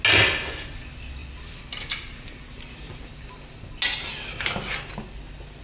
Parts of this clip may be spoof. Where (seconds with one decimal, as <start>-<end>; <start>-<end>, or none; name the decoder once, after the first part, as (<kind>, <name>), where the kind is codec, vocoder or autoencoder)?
1.2-3.8 (vocoder, BigVGAN v2)